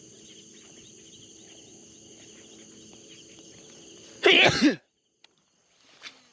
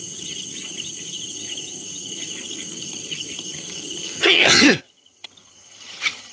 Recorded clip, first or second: first